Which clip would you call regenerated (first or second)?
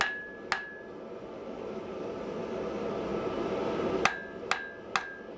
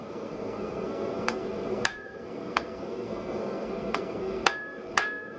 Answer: second